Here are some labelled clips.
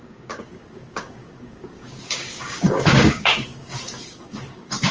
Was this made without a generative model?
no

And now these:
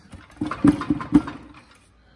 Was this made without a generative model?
yes